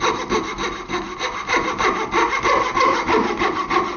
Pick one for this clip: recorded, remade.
remade